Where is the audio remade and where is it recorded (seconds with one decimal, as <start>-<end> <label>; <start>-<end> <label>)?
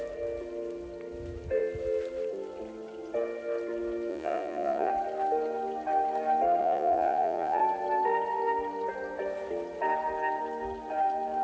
0.0-4.1 recorded; 4.1-4.9 remade; 4.9-6.6 recorded; 6.6-7.6 remade; 7.6-11.4 recorded